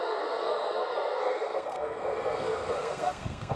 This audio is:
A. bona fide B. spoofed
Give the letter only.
B